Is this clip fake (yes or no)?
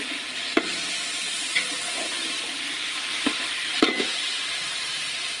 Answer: yes